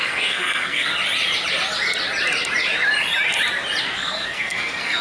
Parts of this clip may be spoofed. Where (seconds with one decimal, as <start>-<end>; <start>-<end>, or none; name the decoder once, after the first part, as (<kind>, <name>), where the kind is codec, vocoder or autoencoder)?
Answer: 0.0-0.9 (codec, SNAC); 3.8-5.0